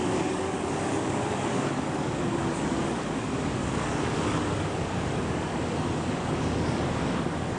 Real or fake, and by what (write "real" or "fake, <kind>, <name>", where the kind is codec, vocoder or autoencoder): fake, codec, DAC